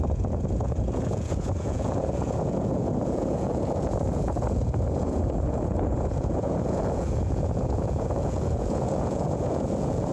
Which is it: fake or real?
fake